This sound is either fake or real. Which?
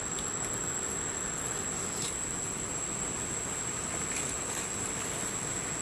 real